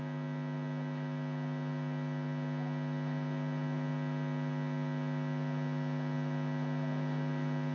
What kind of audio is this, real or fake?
real